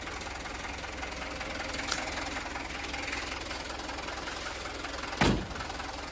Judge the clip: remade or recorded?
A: recorded